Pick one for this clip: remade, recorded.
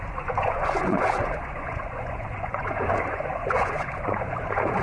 remade